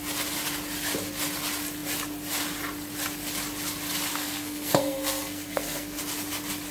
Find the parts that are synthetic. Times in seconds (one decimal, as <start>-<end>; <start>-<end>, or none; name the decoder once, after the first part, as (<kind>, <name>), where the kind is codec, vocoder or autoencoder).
4.1-6.0 (codec, SNAC)